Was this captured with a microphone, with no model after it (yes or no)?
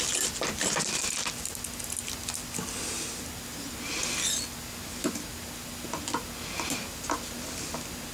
yes